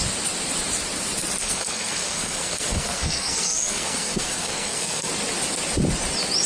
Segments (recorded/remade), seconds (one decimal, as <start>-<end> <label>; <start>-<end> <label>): 0.0-1.4 recorded; 1.4-5.1 remade; 5.1-6.5 recorded